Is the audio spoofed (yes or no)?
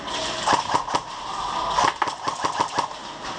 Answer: no